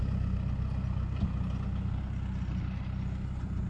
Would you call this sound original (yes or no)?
yes